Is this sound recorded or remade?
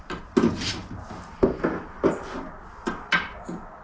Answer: recorded